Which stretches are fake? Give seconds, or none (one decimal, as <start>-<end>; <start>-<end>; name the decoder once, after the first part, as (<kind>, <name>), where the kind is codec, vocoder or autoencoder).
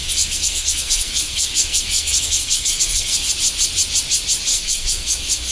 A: 0.0-3.3 (codec, SNAC); 4.5-5.5